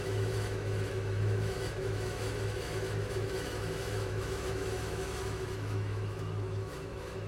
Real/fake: fake